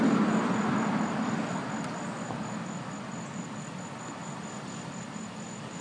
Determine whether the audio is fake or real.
real